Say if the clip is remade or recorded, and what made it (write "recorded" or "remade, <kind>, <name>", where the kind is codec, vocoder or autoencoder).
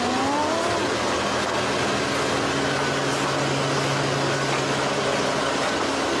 recorded